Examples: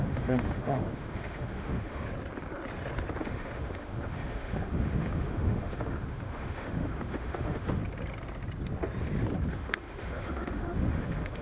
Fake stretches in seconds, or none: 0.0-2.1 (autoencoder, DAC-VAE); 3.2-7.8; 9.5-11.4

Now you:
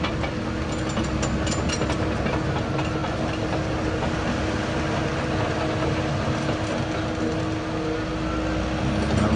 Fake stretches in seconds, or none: none

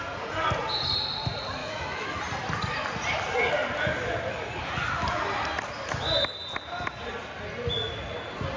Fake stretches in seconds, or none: 1.6-2.2 (autoencoder, DAC-VAE)

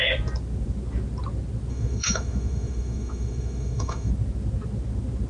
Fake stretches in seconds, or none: 1.7-4.1 (autoencoder, DAC-VAE)